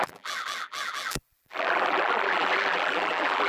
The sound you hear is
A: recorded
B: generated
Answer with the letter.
B